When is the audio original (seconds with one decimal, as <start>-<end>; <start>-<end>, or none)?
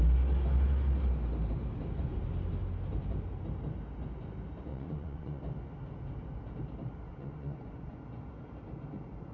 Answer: 0.0-4.7; 5.4-7.1; 8.0-9.3